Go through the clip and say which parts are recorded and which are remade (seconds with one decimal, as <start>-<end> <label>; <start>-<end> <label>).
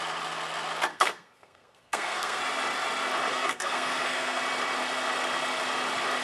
0.0-0.9 recorded; 0.9-2.4 remade; 2.4-3.3 recorded; 3.3-4.4 remade; 4.4-6.2 recorded